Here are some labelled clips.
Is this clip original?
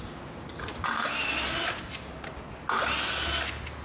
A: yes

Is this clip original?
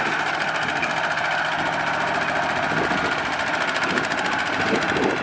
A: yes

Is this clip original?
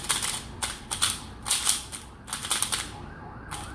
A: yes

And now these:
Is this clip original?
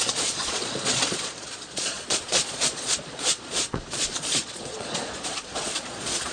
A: no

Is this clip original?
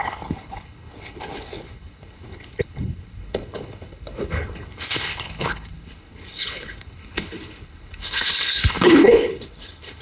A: no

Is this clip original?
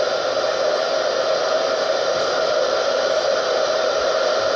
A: yes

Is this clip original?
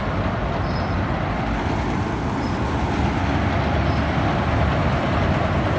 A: yes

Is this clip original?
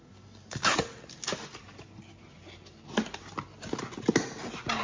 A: yes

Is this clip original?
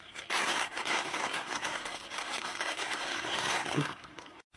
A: no